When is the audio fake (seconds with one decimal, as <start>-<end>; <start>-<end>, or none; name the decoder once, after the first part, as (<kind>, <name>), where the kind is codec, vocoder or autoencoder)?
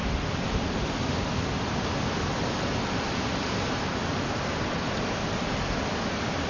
none